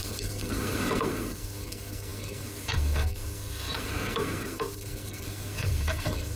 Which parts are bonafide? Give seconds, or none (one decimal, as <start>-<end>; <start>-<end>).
none